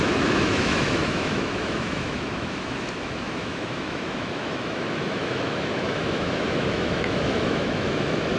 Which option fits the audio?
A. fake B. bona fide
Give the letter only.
A